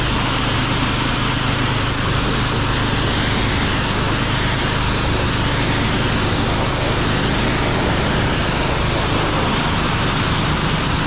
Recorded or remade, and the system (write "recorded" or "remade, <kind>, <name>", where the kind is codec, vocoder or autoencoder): recorded